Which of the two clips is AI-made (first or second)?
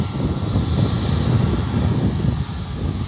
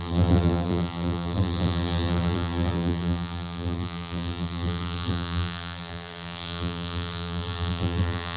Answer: second